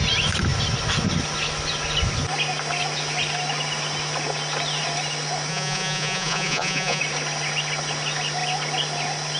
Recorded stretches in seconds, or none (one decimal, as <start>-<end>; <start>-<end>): 0.0-5.5; 7.0-9.4